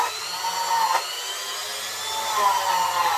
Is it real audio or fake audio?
real